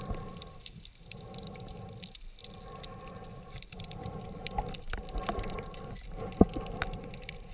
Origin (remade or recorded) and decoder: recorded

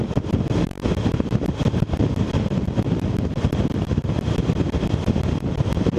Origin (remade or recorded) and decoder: recorded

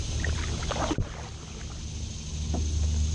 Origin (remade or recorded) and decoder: recorded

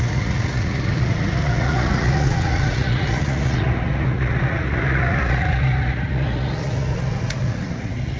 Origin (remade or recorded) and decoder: remade, vocoder, Vocos